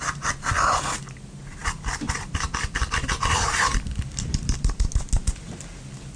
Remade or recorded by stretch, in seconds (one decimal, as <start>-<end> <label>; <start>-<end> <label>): 0.0-1.6 recorded; 1.6-2.8 remade; 2.8-3.7 recorded; 3.7-4.9 remade; 4.9-6.2 recorded